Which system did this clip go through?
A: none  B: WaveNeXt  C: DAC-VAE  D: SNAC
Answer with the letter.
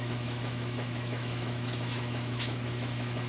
C